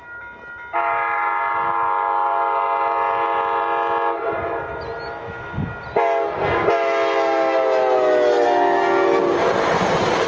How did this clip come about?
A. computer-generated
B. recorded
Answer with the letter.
B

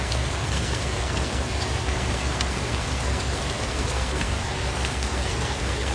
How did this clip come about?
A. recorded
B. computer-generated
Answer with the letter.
B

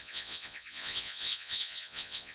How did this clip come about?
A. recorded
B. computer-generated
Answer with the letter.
B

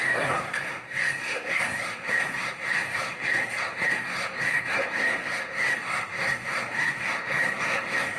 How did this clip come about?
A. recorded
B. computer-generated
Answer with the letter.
B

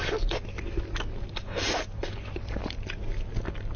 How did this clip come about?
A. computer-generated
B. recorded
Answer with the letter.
B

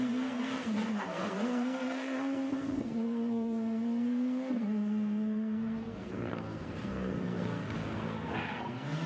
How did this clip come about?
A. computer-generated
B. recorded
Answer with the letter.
A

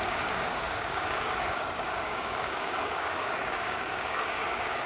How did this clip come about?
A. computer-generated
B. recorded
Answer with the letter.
A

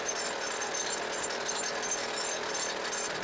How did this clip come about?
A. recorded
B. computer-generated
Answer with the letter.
A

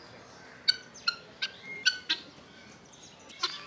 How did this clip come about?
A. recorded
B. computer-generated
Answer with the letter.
A